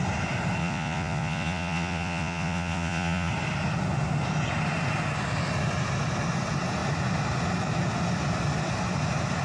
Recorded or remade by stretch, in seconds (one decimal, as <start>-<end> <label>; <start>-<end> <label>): 0.0-0.6 recorded; 0.6-3.3 remade; 3.3-9.4 recorded